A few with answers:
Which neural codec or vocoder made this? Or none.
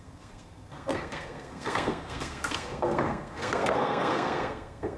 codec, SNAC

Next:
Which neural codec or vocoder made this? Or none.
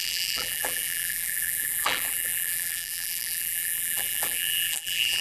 vocoder, BigVGAN v2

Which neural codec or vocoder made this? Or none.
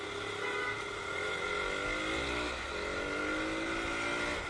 none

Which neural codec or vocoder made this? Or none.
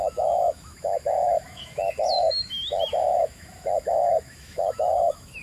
autoencoder, DAC-VAE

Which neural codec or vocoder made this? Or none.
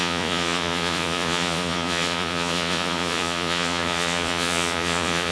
vocoder, Vocos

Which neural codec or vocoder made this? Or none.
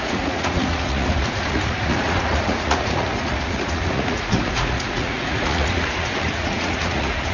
vocoder, Vocos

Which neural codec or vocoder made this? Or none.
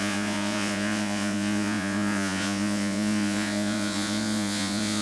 vocoder, Vocos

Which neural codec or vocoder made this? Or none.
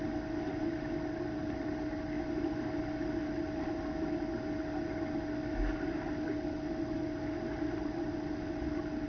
none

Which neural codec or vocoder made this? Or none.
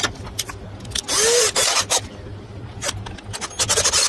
none